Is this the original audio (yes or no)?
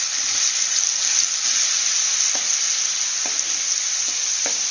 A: yes